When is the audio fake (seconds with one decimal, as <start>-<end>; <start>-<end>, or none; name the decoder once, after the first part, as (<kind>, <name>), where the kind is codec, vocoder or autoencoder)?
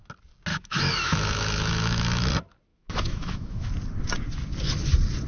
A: 0.5-2.3 (autoencoder, DAC-VAE); 2.7-3.7